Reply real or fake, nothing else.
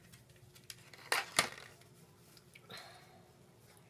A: real